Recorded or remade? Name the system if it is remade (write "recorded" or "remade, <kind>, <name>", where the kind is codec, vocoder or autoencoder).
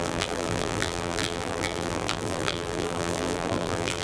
remade, vocoder, BigVGAN v2